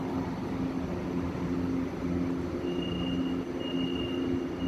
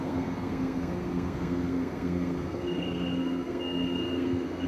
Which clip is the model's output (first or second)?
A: second